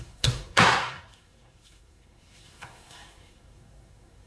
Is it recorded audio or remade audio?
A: remade